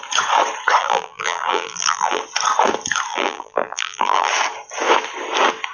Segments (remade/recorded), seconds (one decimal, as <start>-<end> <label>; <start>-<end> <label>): 0.0-0.8 recorded; 0.8-2.2 remade; 2.2-3.1 recorded; 3.1-4.3 remade; 4.3-5.7 recorded